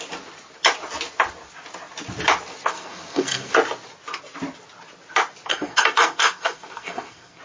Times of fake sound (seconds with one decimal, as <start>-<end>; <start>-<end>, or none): 2.7-3.5; 5.5-7.4